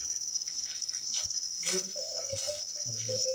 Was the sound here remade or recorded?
remade